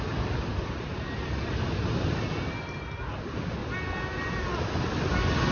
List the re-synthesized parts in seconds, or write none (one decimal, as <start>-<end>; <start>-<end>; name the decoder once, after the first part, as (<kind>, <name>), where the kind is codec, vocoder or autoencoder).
none